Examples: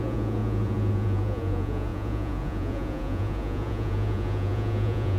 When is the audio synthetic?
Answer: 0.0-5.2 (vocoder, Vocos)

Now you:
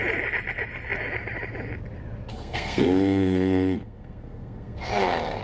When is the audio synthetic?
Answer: 2.3-5.4 (codec, SNAC)

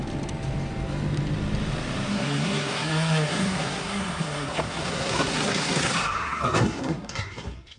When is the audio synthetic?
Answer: 2.1-7.8 (codec, SNAC)

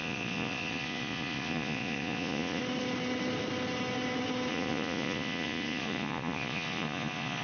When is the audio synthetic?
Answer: 0.0-2.6 (vocoder, Vocos); 4.5-7.4

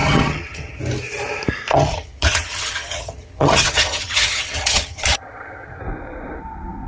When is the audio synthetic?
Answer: 0.0-0.8 (vocoder, HiFi-GAN); 1.7-5.8